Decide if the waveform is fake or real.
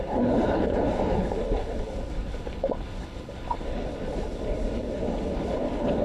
fake